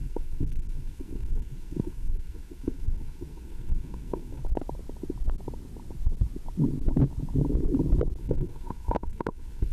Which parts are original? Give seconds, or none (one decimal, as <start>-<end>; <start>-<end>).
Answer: 4.4-8.2